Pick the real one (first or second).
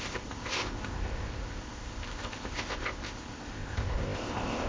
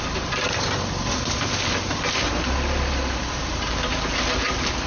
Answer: second